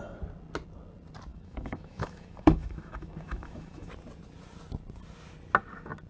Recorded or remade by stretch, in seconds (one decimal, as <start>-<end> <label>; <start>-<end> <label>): 0.0-1.3 recorded; 1.3-3.9 remade; 3.9-6.1 recorded